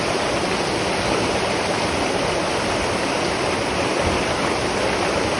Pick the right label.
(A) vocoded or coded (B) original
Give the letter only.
B